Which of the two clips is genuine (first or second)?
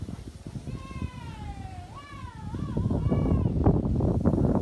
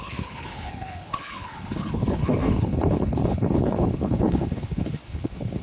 first